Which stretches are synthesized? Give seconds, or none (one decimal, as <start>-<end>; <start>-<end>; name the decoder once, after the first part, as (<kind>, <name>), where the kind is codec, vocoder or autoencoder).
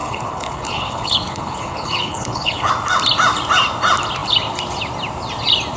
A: 0.0-2.7 (codec, HILCodec)